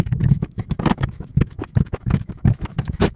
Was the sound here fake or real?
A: fake